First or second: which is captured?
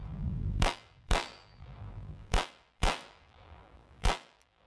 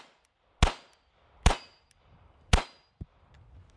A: second